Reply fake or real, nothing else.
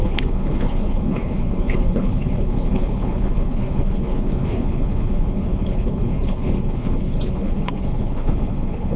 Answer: fake